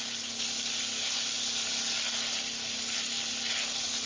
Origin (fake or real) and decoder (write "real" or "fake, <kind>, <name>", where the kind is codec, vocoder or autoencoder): real